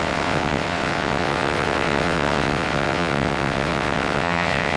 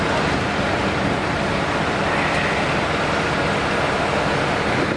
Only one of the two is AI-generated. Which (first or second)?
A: first